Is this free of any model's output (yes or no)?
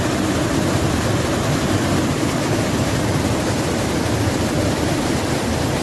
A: yes